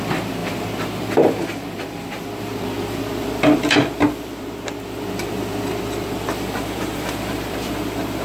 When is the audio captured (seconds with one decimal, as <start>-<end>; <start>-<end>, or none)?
none